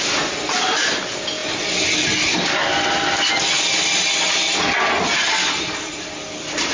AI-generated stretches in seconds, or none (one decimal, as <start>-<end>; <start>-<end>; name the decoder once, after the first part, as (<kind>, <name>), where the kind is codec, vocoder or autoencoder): none